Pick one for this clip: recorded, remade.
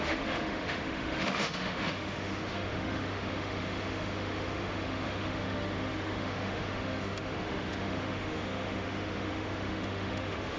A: remade